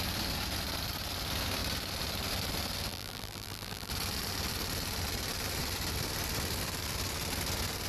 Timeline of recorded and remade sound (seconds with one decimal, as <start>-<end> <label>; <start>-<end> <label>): 0.0-2.9 recorded; 2.9-3.9 remade; 3.9-7.9 recorded